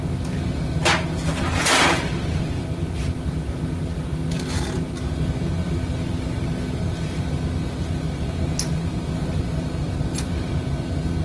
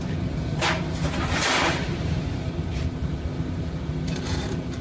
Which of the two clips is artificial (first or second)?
second